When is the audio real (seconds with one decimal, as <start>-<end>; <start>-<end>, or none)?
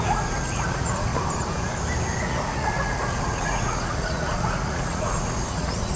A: 1.1-2.2